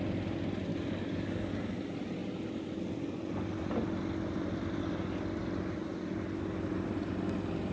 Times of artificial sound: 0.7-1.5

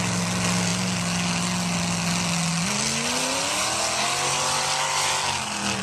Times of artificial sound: none